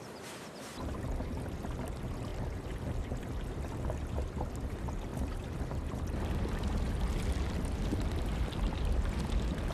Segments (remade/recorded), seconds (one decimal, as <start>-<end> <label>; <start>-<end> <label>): 0.0-9.7 remade